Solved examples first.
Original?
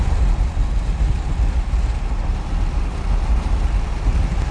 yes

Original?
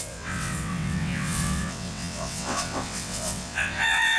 no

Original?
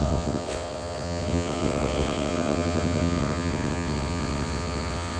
no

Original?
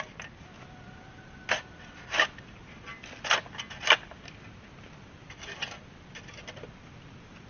yes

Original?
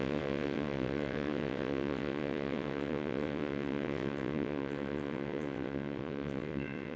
no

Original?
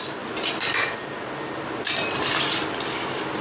yes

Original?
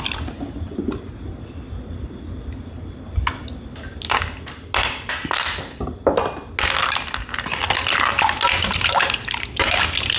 yes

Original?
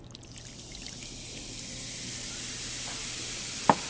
yes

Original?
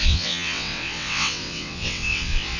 no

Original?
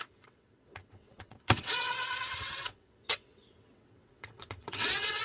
no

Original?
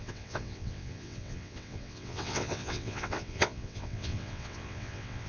no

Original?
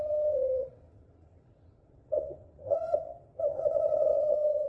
no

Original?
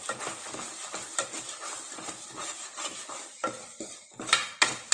yes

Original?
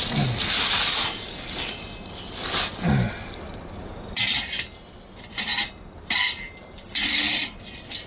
yes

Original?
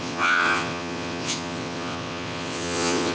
no